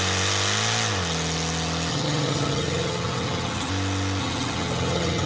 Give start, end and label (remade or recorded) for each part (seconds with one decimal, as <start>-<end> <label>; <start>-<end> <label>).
0.0-1.9 recorded; 1.9-3.7 remade; 3.7-4.2 recorded; 4.2-5.3 remade